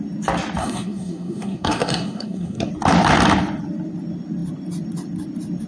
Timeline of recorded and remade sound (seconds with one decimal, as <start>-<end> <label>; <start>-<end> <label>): 0.0-0.6 recorded; 0.6-2.7 remade; 2.7-5.7 recorded